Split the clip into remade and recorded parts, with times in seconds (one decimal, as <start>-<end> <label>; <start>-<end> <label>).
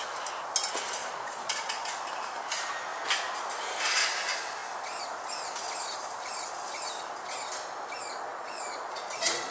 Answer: 0.0-1.0 recorded; 1.0-1.9 remade; 1.9-8.3 recorded; 8.3-9.5 remade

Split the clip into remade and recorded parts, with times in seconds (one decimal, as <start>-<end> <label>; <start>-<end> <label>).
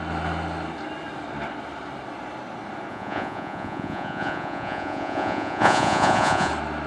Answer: 0.0-2.9 recorded; 2.9-6.5 remade; 6.5-6.9 recorded